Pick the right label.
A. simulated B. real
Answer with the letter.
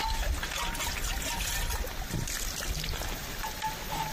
B